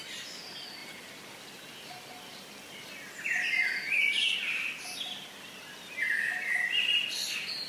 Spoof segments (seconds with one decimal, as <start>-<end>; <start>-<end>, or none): none